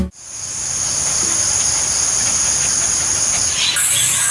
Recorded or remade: recorded